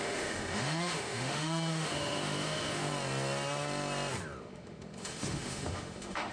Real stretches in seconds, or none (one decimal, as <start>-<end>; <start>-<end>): 2.9-4.4